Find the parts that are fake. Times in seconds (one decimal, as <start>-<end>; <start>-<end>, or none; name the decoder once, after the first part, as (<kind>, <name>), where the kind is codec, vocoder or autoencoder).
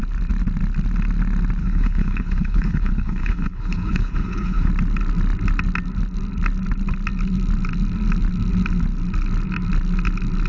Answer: 1.6-4.7 (codec, HILCodec)